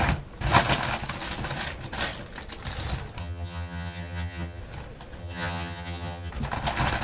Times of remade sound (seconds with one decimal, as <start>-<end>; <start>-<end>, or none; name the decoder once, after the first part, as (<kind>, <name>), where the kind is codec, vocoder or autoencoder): 3.2-4.6 (vocoder, HiFi-GAN); 5.2-6.3